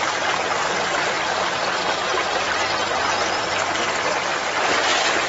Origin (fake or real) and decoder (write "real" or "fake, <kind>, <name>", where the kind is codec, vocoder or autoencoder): real